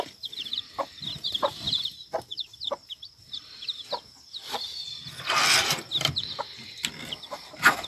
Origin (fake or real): real